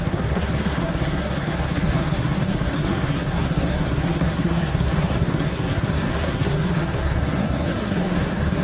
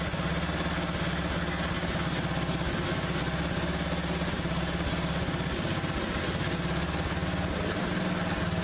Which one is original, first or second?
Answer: second